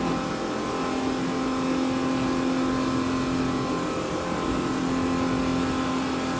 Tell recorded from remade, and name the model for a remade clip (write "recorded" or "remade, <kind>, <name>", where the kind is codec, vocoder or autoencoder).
recorded